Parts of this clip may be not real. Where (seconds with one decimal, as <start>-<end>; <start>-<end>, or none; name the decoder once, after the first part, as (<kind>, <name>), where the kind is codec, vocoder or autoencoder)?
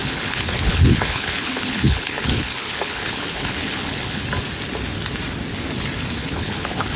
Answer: 0.0-4.2 (codec, HILCodec); 6.2-7.0